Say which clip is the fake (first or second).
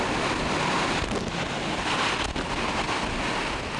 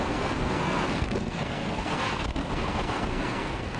second